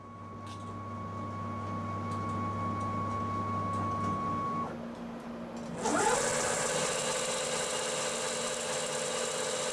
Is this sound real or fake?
real